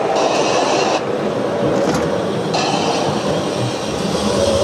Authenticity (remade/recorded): recorded